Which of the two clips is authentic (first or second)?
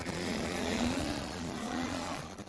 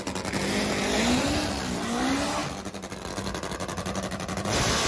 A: second